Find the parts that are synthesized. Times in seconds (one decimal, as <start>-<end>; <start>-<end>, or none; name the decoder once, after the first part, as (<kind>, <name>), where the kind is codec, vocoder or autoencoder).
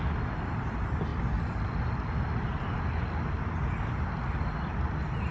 none